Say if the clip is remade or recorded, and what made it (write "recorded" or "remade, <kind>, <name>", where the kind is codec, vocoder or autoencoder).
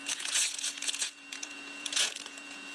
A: remade, vocoder, Vocos